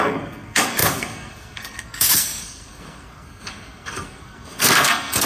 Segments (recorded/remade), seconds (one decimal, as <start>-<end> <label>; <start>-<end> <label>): 0.0-5.3 remade